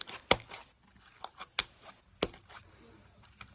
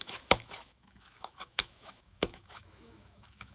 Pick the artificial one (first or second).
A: second